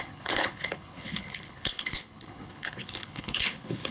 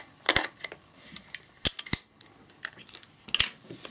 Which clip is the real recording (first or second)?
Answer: second